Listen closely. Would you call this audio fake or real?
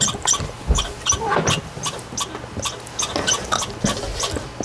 real